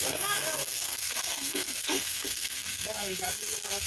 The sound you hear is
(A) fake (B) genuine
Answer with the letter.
A